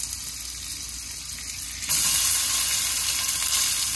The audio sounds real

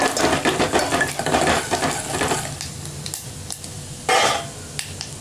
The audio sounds real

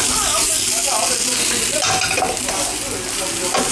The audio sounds real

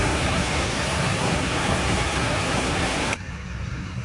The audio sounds fake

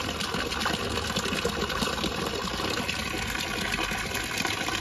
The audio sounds real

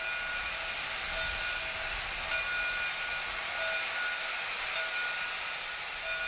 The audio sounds real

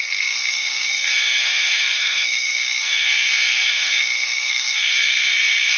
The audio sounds fake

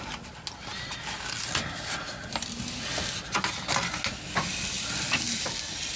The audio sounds real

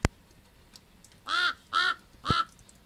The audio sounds real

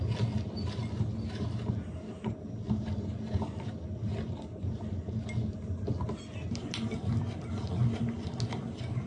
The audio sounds real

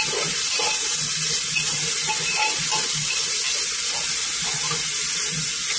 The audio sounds real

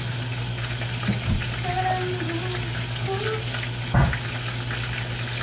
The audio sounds real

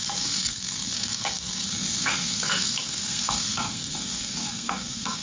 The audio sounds fake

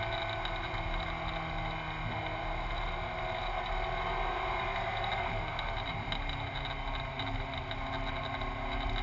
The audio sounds real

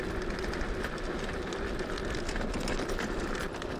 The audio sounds real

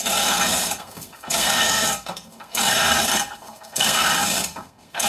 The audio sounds fake